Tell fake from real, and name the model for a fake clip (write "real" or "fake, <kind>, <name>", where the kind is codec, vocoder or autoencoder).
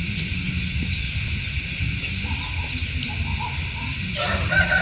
real